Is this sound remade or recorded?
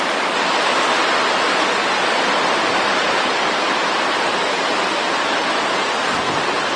recorded